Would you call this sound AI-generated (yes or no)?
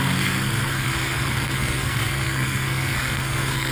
yes